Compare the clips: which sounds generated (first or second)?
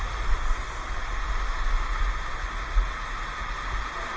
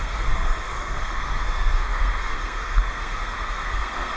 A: second